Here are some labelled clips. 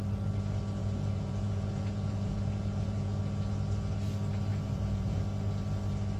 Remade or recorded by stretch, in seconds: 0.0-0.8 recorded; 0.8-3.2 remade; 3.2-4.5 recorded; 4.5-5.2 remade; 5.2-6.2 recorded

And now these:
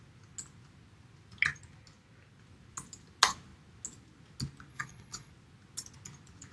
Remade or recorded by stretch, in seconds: 0.0-4.7 recorded; 4.7-5.3 remade; 5.3-6.5 recorded

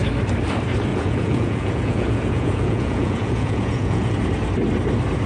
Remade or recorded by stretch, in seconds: 0.0-0.9 recorded; 0.9-4.1 remade; 4.1-5.3 recorded

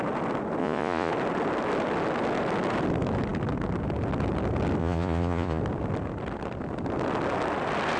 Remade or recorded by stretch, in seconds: 0.0-0.6 recorded; 0.6-1.1 remade; 1.1-4.8 recorded; 4.8-5.6 remade; 5.6-8.0 recorded

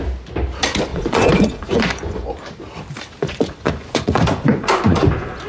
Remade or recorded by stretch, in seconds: 0.0-0.9 recorded; 0.9-2.3 remade; 2.3-3.2 recorded; 3.2-5.1 remade; 5.1-5.5 recorded

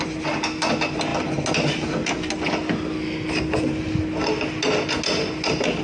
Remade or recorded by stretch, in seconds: 0.0-5.8 recorded

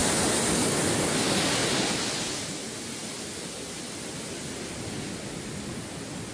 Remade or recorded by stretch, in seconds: 0.0-6.3 recorded

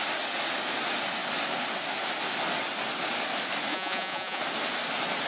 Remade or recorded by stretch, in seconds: 0.0-3.7 recorded; 3.7-4.4 remade; 4.4-5.3 recorded